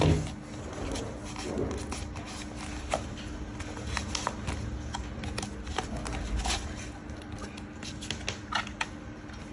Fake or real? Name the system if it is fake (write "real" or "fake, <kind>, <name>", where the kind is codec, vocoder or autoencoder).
real